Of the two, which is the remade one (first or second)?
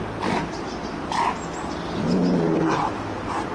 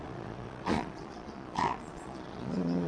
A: second